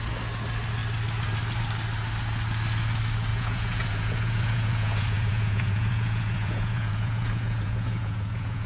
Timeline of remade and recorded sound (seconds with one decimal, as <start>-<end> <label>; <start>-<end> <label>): 0.0-3.3 recorded; 3.3-8.7 remade